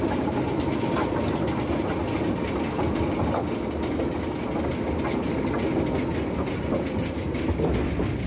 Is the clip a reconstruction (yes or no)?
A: no